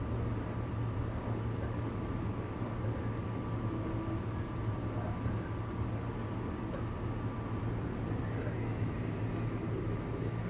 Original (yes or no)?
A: yes